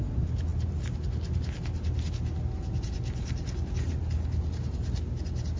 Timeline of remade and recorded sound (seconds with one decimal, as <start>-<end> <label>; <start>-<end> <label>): 0.0-5.6 recorded